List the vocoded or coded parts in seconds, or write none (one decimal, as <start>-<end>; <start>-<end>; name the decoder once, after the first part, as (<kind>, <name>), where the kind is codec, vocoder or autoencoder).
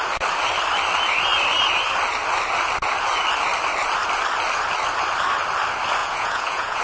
6.0-6.8 (vocoder, Vocos)